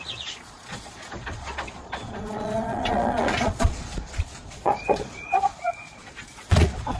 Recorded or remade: remade